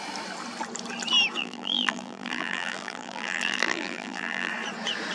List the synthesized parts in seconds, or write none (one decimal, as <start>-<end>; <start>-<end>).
1.4-4.5